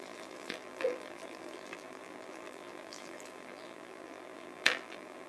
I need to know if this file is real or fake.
fake